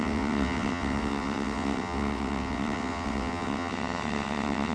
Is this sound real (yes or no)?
no